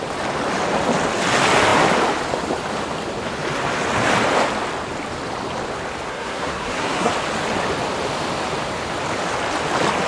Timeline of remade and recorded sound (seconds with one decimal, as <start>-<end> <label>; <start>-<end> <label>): 0.0-6.1 recorded; 6.1-7.1 remade; 7.1-10.1 recorded